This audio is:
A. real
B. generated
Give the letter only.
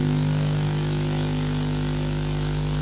A